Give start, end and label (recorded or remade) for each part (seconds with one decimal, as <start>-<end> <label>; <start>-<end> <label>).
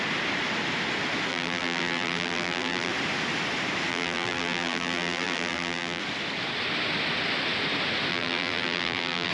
0.0-1.3 recorded; 1.3-2.9 remade; 2.9-3.9 recorded; 3.9-6.0 remade; 6.0-8.1 recorded; 8.1-9.3 remade